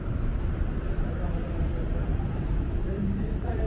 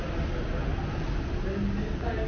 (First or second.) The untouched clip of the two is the second